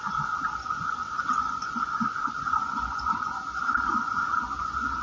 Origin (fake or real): fake